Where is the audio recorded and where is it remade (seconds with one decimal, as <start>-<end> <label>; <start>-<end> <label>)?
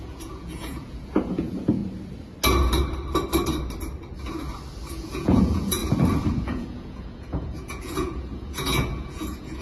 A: 0.0-1.8 remade; 1.8-4.9 recorded; 4.9-5.8 remade; 5.8-6.4 recorded; 6.4-9.6 remade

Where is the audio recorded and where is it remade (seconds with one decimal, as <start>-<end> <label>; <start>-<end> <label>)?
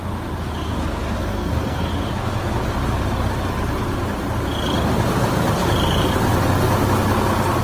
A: 0.0-1.2 recorded; 1.2-1.9 remade; 1.9-7.6 recorded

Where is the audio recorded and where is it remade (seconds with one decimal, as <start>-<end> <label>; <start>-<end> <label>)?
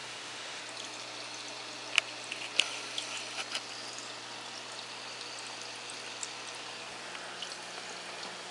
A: 0.0-0.6 remade; 0.6-8.5 recorded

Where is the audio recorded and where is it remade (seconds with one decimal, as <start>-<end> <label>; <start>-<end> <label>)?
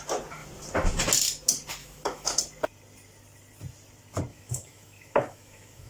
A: 0.0-1.8 recorded; 1.8-2.4 remade; 2.4-4.3 recorded; 4.3-5.9 remade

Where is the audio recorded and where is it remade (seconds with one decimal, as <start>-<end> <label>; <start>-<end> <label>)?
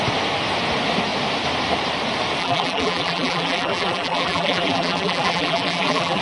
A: 0.0-2.4 recorded; 2.4-6.2 remade